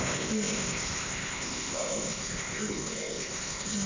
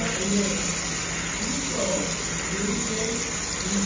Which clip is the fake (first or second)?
first